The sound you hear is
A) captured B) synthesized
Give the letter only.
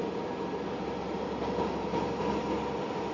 A